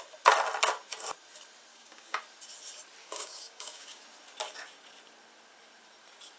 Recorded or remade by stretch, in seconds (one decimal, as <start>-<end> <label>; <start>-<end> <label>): 0.0-1.7 recorded; 1.7-2.2 remade; 2.2-3.0 recorded; 3.0-4.0 remade; 4.0-6.4 recorded